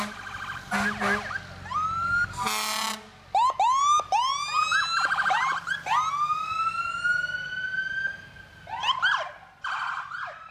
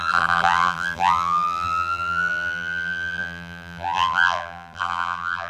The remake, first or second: second